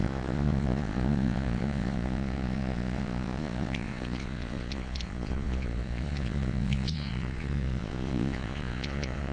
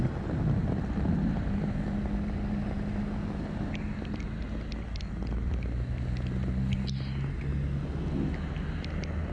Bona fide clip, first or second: second